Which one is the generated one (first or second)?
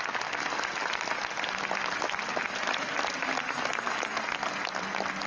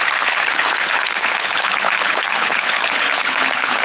second